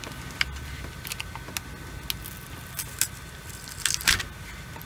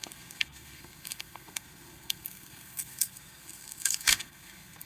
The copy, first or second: second